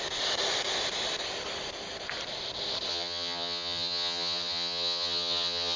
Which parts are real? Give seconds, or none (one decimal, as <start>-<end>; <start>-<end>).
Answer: 0.0-2.9